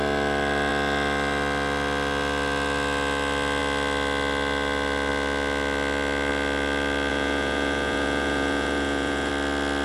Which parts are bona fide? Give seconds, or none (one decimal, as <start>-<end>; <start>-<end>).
0.0-7.1; 9.3-9.8